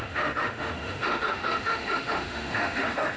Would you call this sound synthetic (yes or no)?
yes